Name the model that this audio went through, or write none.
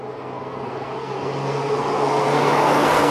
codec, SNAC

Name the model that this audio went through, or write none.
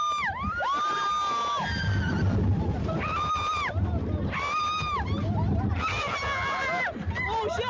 none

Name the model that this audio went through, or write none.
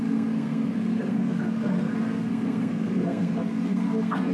codec, SNAC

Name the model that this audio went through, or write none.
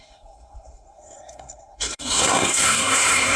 codec, SNAC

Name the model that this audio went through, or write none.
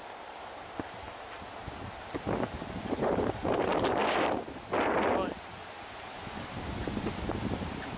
none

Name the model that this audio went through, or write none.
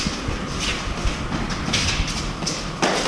none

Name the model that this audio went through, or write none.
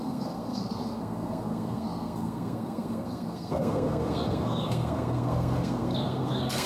codec, SNAC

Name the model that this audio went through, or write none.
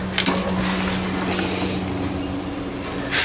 none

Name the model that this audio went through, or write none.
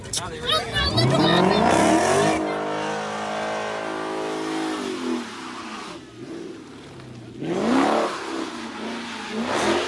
none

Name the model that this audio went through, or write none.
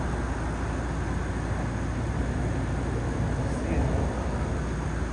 none